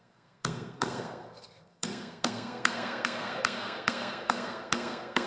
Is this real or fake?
fake